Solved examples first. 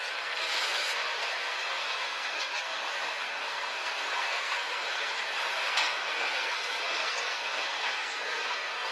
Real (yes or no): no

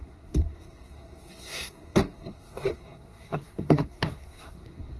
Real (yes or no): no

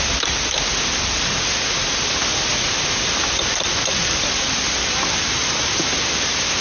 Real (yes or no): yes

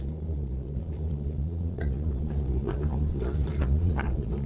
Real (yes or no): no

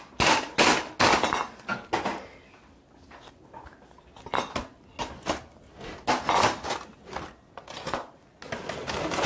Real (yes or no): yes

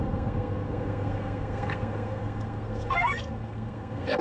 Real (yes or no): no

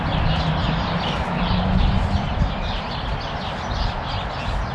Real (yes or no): yes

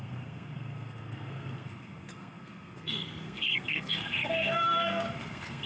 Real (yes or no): no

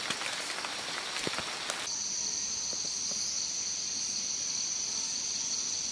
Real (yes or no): yes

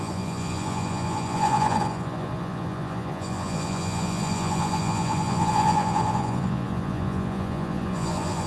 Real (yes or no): no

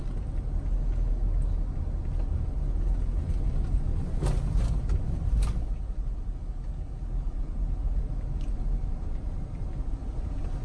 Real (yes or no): yes